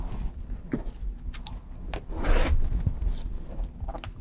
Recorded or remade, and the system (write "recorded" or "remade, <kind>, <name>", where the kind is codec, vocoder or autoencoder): recorded